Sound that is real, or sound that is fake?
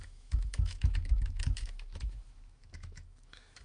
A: fake